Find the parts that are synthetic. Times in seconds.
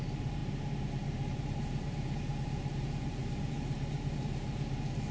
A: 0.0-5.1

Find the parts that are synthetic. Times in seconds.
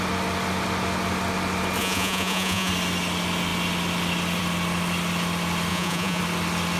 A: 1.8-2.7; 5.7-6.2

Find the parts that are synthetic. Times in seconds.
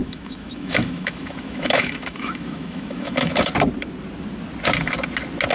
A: 0.0-3.3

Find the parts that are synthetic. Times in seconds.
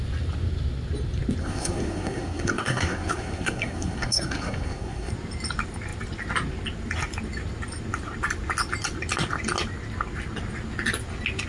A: 1.4-5.1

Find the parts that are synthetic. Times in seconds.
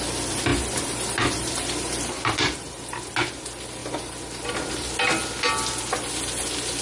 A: none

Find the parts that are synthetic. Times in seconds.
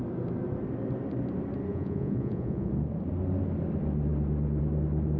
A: 1.7-2.7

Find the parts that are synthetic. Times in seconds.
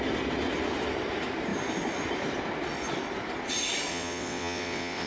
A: 3.9-5.1